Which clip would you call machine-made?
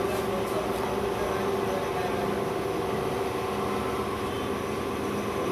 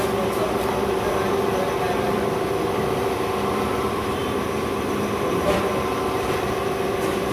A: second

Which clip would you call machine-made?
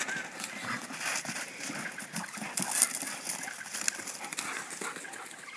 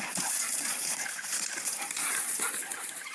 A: second